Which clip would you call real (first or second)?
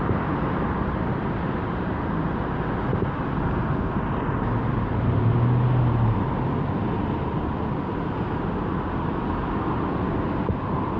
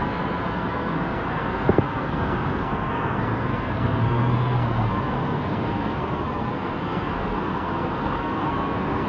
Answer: first